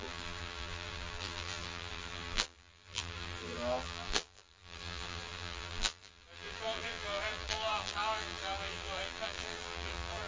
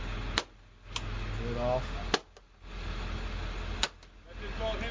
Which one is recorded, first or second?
second